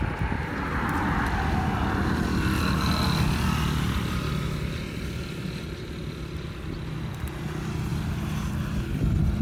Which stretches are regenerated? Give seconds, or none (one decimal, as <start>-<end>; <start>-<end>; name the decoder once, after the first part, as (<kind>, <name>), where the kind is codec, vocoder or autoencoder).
none